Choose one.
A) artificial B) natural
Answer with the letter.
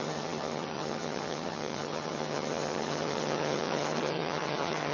A